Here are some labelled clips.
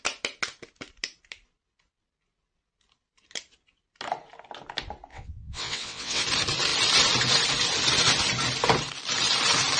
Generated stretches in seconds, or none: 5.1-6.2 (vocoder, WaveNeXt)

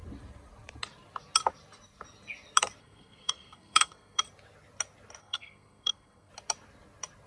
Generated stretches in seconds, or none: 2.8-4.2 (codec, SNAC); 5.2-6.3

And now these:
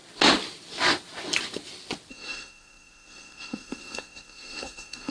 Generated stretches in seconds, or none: 2.1-5.1 (codec, SNAC)

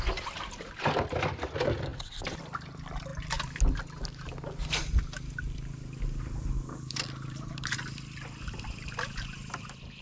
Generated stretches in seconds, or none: none

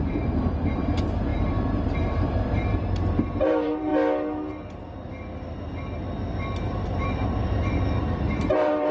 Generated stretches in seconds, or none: 0.0-3.9 (vocoder, BigVGAN v2); 6.7-8.9

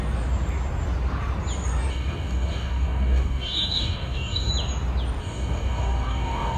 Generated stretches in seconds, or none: 1.9-4.5 (codec, DAC); 5.2-6.6